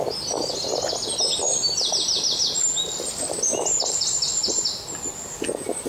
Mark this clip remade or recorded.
recorded